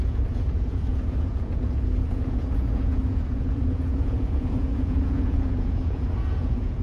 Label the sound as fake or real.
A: fake